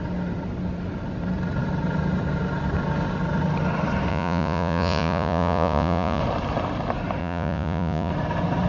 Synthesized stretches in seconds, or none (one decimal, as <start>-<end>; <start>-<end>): 4.1-6.2; 7.2-8.1